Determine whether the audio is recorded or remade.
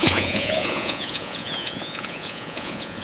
remade